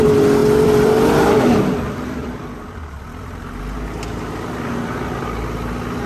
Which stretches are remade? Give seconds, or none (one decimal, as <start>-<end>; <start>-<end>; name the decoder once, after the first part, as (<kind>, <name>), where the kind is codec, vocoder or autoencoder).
0.4-3.6 (vocoder, BigVGAN v2)